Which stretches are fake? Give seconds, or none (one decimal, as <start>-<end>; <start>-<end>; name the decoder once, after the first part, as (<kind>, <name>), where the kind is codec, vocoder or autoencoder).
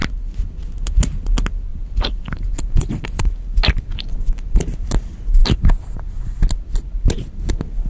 1.7-3.2 (vocoder, BigVGAN v2)